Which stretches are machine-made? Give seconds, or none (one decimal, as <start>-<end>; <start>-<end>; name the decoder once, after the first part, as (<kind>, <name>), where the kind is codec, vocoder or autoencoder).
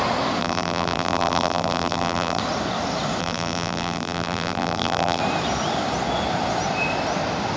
0.4-2.4 (vocoder, BigVGAN v2); 3.2-5.2